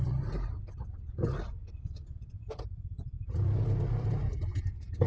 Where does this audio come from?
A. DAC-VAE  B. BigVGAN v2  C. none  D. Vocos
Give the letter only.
B